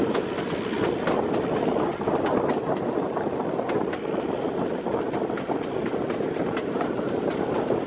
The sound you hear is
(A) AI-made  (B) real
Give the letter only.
B